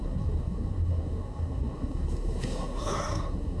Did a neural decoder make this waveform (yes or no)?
yes